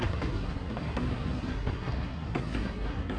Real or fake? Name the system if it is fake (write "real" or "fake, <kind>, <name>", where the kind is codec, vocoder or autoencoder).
fake, codec, SNAC